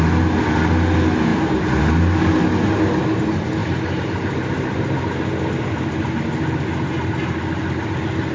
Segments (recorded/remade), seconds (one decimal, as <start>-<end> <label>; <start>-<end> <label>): 0.0-8.3 recorded